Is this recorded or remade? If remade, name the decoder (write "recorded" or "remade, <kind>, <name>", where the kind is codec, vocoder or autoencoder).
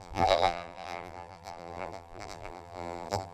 remade, vocoder, BigVGAN v2